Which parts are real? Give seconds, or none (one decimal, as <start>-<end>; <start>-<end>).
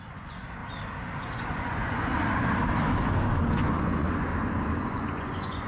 0.6-1.2; 2.1-3.5; 4.3-4.8